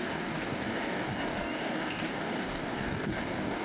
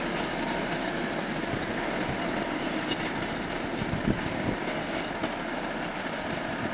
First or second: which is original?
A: second